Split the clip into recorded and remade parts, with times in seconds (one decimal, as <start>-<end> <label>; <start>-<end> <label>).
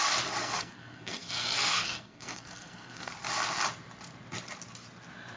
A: 0.0-0.4 recorded; 0.4-3.1 remade; 3.1-5.4 recorded